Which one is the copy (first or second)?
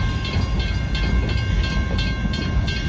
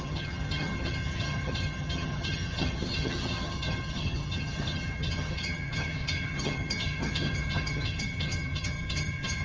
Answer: second